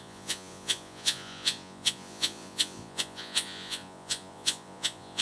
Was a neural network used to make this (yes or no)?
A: yes